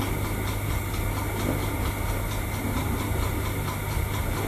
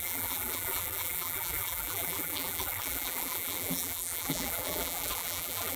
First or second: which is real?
first